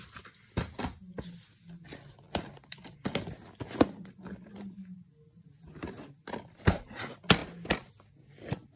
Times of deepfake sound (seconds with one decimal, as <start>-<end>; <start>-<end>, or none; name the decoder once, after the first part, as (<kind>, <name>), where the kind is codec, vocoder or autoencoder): none